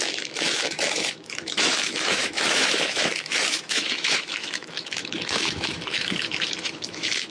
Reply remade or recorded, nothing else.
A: remade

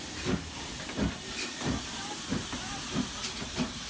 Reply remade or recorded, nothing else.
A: recorded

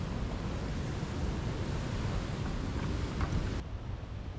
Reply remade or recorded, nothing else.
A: recorded